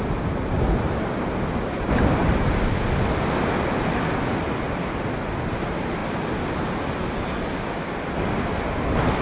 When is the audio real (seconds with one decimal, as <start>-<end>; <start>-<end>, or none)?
0.0-9.2